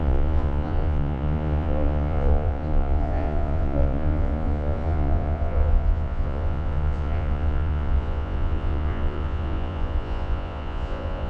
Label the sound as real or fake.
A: fake